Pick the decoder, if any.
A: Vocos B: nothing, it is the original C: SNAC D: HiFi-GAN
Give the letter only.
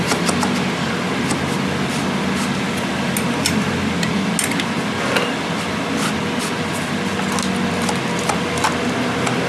B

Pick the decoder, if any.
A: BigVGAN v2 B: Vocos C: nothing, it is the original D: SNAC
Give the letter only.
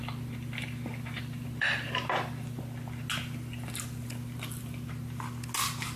C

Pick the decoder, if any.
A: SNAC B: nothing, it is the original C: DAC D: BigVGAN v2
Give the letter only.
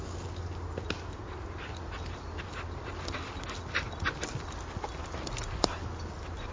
B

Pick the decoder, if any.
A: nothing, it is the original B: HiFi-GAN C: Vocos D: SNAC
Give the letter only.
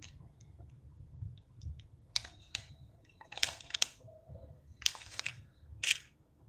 D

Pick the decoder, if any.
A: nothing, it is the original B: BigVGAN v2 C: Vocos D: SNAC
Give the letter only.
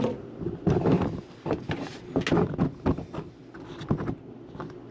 A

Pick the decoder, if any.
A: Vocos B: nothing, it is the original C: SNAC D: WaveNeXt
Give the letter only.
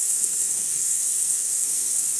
C